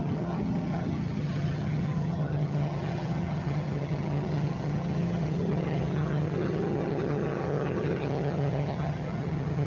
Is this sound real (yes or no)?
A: no